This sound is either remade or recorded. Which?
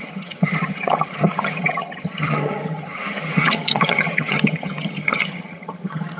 remade